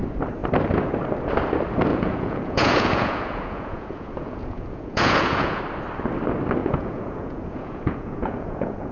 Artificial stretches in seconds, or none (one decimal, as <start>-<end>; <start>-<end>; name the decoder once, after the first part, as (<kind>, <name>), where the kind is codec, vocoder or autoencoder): 1.9-5.6 (vocoder, Vocos); 6.6-8.9